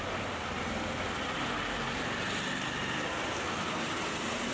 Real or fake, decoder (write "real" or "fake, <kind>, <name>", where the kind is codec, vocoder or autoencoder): real